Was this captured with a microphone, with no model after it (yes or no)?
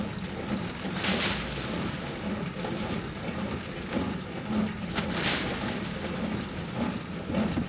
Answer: yes